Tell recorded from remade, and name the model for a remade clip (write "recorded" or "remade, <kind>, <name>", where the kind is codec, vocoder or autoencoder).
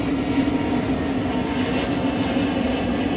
recorded